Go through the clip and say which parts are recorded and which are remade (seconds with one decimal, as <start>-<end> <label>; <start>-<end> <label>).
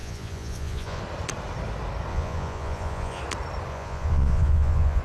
0.0-1.0 remade; 1.0-2.1 recorded; 2.1-3.2 remade; 3.2-3.7 recorded; 3.7-5.0 remade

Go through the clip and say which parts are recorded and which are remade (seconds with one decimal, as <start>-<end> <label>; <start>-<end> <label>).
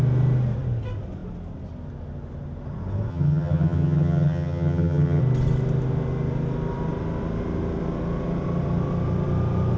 0.0-3.1 recorded; 3.1-5.2 remade; 5.2-9.8 recorded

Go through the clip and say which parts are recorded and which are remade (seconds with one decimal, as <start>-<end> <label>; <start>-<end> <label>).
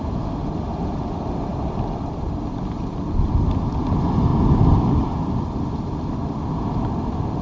0.0-1.5 recorded; 1.5-3.1 remade; 3.1-4.3 recorded; 4.3-5.8 remade; 5.8-7.4 recorded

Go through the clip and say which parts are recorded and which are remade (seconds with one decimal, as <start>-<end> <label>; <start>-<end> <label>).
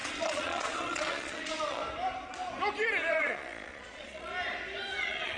0.0-1.8 remade; 1.8-3.1 recorded; 3.1-4.3 remade; 4.3-5.0 recorded; 5.0-5.4 remade